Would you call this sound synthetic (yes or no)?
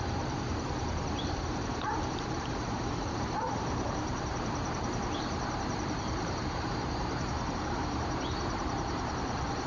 yes